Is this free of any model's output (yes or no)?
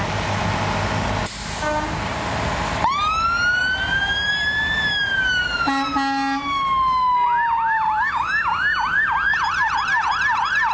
yes